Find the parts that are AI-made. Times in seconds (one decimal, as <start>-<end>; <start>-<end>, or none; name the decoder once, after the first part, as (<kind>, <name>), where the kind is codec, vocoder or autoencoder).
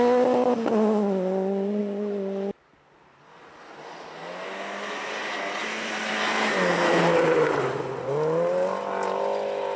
none